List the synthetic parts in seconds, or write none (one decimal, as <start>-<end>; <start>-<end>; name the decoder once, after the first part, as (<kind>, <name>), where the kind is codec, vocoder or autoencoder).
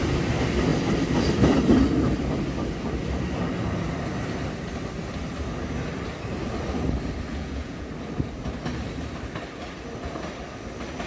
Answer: 7.3-7.9 (vocoder, Vocos)